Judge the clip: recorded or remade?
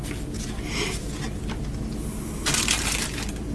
recorded